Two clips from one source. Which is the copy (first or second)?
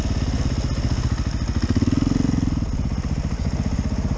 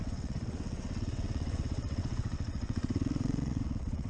second